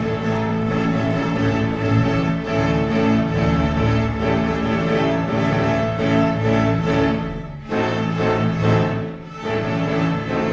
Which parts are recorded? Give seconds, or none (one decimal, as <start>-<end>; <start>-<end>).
0.0-0.5; 2.3-10.5